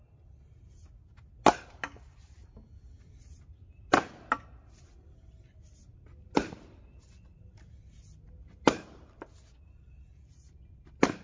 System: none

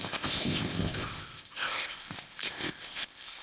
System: codec, ZipCodec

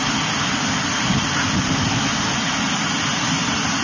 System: none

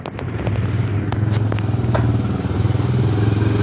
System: none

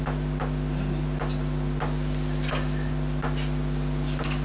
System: none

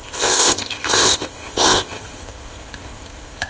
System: codec, ZipCodec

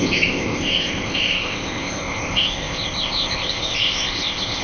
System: codec, ZipCodec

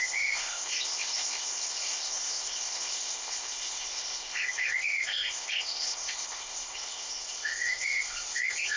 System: codec, ZipCodec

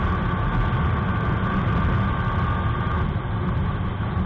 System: none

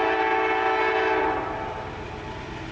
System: none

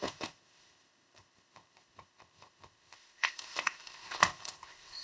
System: codec, ZipCodec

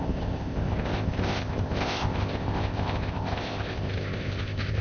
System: codec, ZipCodec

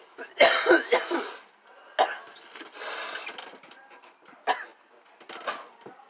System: none